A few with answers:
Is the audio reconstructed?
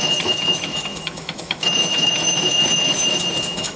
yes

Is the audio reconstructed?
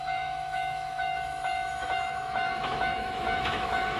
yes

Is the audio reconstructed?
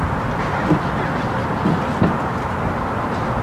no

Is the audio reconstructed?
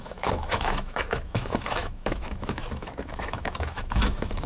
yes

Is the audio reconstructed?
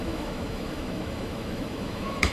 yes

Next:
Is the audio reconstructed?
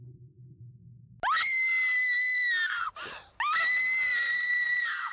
no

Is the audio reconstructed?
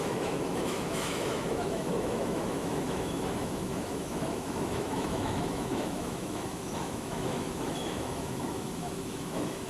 yes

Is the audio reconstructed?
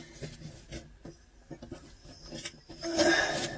no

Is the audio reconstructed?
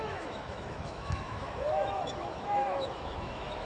yes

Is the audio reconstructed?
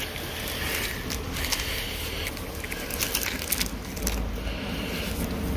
no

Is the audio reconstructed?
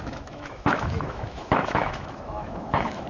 yes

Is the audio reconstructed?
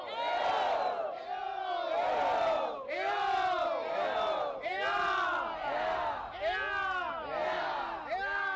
no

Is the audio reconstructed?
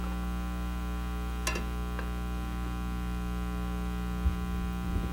no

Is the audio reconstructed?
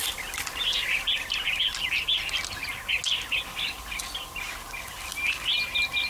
no